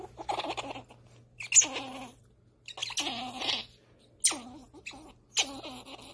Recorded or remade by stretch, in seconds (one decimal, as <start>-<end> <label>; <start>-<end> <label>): 0.0-6.1 recorded

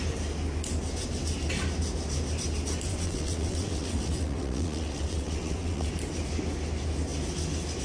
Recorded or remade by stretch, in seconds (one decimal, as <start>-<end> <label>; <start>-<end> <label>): 0.0-2.9 recorded; 2.9-5.9 remade; 5.9-7.8 recorded

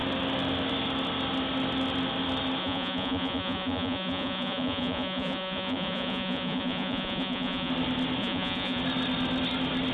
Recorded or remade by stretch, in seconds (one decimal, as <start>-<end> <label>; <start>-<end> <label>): 0.0-2.6 recorded; 2.6-7.7 remade; 7.7-8.2 recorded; 8.2-8.8 remade; 8.8-9.9 recorded

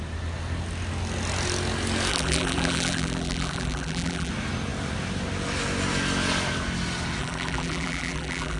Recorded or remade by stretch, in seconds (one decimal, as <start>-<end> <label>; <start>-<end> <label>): 0.0-2.1 recorded; 2.1-4.3 remade; 4.3-7.2 recorded; 7.2-8.6 remade

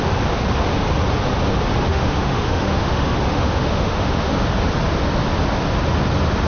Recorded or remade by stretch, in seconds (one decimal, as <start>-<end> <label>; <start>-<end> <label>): 0.0-1.9 recorded; 1.9-4.3 remade; 4.3-6.5 recorded

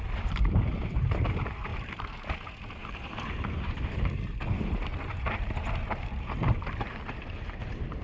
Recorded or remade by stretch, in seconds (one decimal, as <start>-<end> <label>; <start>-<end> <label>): 0.0-8.0 remade

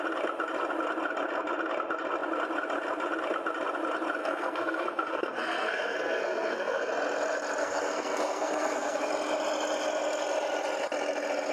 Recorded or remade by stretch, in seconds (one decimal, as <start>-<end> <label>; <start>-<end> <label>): 0.0-4.2 recorded; 4.2-6.9 remade; 6.9-7.6 recorded; 7.6-9.1 remade; 9.1-11.5 recorded